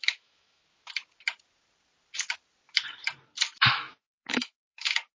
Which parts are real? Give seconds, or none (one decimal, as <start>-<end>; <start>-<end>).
0.6-3.7

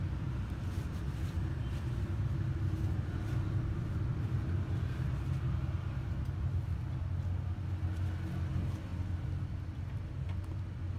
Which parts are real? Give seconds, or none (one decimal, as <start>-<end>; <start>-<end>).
0.0-11.0

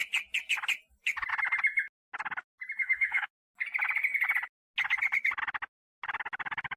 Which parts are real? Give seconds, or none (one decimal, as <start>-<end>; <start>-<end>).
0.0-2.8; 3.3-6.8

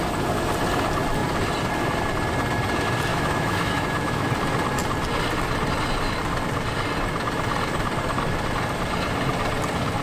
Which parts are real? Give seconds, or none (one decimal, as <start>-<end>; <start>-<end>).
0.0-3.1; 4.3-10.0

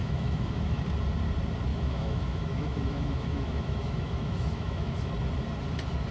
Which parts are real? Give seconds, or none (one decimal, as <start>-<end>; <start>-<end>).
0.8-1.7; 5.1-6.1